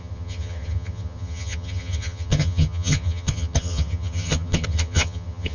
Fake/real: fake